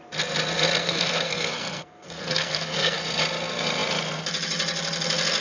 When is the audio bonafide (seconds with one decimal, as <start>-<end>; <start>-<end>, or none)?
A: 0.0-0.8; 3.0-5.4